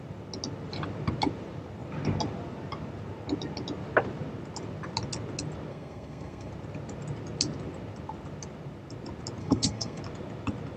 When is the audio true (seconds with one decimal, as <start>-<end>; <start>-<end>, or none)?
0.0-5.7; 6.5-9.4; 10.0-10.8